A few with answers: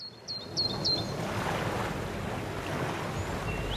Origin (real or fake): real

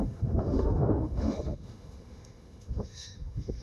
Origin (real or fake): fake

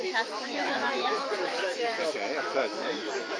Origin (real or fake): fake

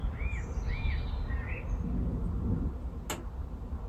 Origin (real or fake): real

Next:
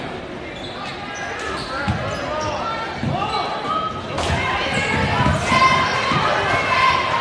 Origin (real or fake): real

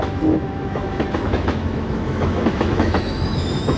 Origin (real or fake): fake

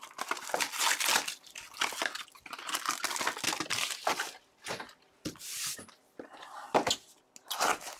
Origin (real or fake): real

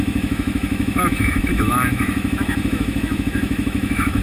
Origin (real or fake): fake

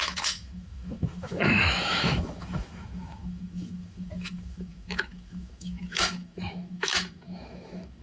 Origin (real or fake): fake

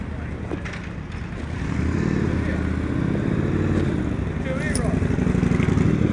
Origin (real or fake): real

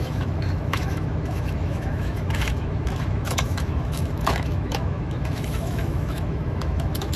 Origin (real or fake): fake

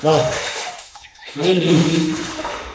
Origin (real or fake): fake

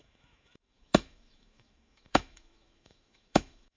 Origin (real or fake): fake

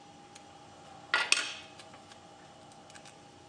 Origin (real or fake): real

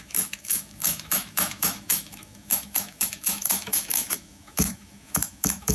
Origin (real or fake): fake